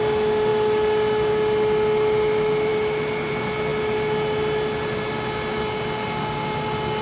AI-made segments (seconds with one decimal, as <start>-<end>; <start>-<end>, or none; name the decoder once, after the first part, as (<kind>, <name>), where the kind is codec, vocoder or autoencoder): none